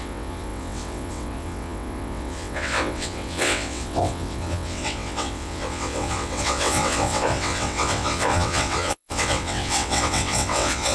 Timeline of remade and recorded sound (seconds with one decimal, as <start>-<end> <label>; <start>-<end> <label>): 0.0-10.9 remade